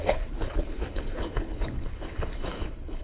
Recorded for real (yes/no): no